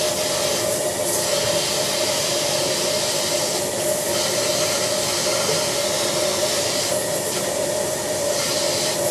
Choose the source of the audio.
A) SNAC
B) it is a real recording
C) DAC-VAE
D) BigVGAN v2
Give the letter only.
B